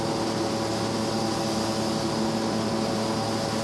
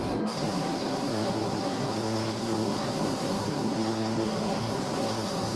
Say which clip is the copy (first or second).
second